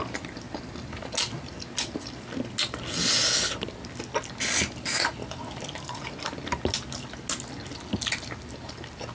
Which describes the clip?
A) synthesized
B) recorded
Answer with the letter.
B